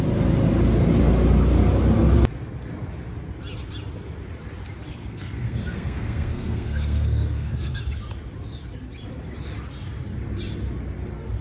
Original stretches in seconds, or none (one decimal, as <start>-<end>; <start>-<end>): 0.0-4.9; 7.8-11.4